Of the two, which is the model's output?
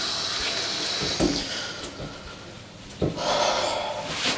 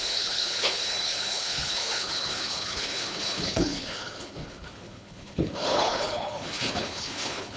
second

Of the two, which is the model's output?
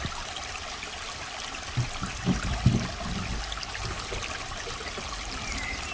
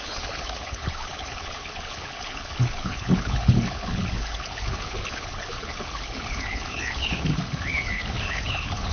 second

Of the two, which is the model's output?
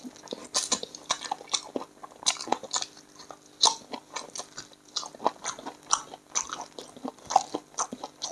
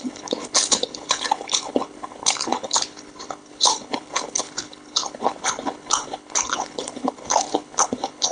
second